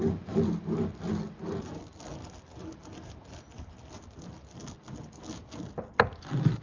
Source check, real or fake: real